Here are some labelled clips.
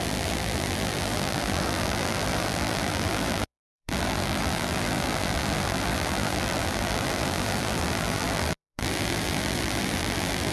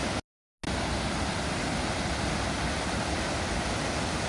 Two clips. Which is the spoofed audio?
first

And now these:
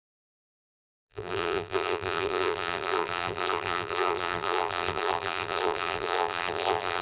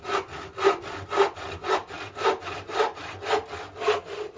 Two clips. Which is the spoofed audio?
first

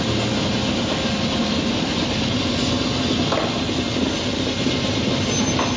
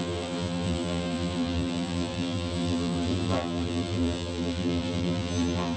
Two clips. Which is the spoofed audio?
second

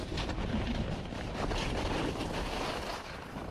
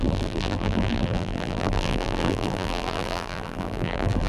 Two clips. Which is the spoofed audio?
second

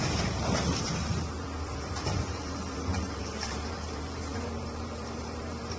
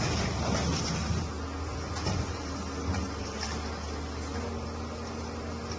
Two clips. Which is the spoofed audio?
first